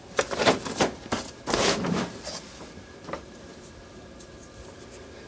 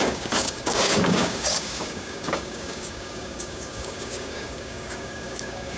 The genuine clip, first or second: first